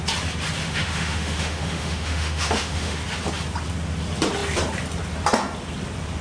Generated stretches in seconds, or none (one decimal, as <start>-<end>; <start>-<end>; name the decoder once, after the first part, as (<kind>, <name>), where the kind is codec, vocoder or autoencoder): 0.6-3.0 (autoencoder, DAC-VAE)